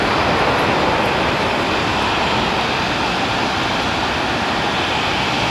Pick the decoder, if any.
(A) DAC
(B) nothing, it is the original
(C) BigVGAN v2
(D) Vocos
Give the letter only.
B